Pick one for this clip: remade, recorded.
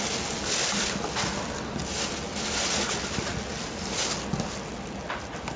recorded